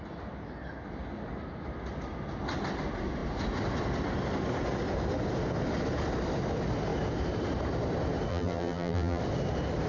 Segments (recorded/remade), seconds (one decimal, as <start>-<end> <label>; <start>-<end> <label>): 0.0-8.3 recorded; 8.3-9.2 remade; 9.2-9.9 recorded